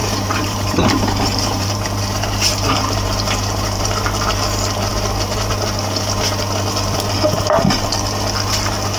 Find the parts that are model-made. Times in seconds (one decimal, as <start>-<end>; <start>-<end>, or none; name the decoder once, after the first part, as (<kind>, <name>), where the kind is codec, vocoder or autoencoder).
0.0-3.9 (vocoder, BigVGAN v2); 4.9-5.5